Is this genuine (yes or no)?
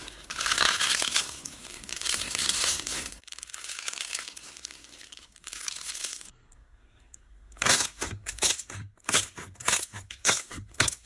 no